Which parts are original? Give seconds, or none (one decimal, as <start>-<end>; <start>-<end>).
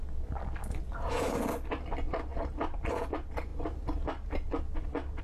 0.0-5.2